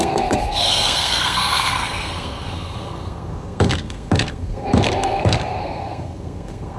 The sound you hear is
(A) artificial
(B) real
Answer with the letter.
A